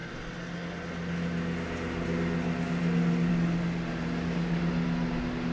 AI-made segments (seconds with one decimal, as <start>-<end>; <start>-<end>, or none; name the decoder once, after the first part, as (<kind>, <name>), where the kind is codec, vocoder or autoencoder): none